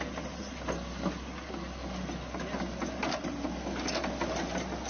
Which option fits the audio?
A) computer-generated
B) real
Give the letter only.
B